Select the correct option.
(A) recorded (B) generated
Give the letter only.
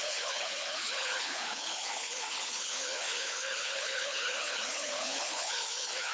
B